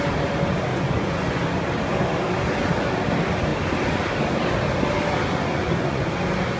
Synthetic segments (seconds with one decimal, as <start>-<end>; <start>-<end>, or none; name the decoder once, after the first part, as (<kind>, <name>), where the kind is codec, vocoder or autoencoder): 0.7-1.4 (vocoder, Vocos); 5.5-6.1